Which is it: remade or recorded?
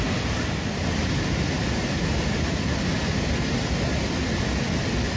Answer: recorded